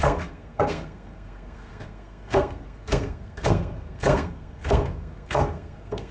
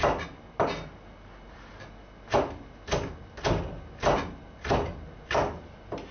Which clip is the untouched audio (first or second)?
second